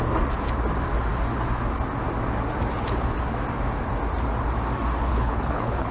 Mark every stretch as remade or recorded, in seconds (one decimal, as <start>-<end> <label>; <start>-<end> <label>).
0.0-5.1 recorded; 5.1-5.9 remade